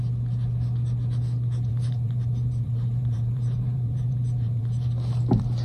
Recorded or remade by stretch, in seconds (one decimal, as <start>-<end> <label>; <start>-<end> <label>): 0.0-1.7 recorded; 1.7-4.9 remade; 4.9-5.6 recorded